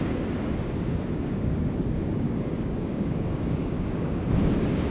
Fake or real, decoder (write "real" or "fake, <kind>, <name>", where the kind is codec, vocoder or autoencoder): fake, codec, DAC